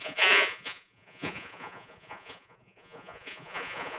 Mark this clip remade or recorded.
remade